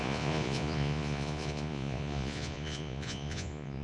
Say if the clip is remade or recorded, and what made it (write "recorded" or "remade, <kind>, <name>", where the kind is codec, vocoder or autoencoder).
remade, vocoder, Vocos